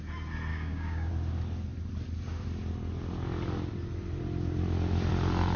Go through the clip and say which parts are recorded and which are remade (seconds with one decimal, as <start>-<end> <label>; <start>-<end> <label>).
0.0-0.5 recorded; 0.5-1.1 remade; 1.1-5.6 recorded